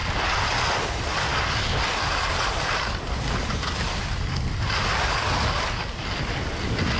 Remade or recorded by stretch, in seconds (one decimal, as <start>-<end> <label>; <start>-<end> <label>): 0.0-7.0 recorded